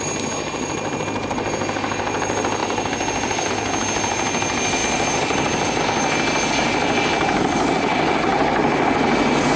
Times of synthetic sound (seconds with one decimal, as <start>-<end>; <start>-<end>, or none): 2.6-3.5; 4.8-5.8